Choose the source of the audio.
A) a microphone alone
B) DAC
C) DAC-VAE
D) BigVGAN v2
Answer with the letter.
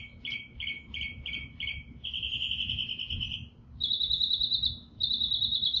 A